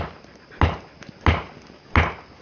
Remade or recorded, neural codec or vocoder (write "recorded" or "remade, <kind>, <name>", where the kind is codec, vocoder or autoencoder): recorded